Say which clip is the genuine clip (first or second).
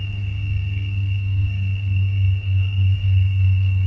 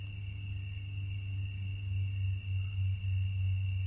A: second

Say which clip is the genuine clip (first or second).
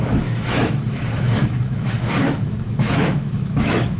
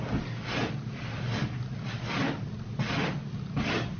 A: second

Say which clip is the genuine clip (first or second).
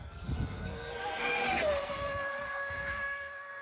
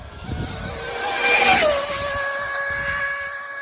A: second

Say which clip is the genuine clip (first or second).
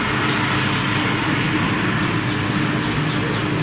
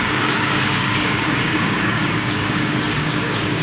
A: first